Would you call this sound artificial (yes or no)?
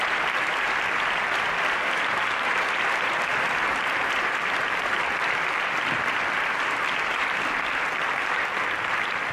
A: yes